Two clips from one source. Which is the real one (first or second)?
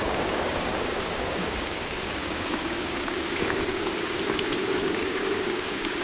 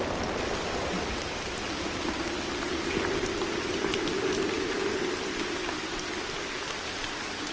second